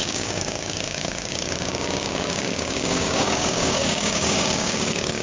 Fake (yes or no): yes